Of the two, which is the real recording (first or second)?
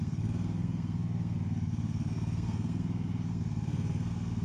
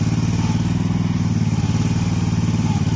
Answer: second